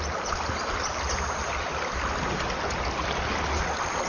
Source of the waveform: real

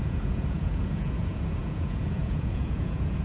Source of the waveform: fake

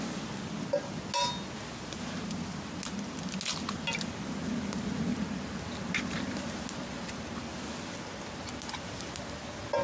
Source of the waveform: real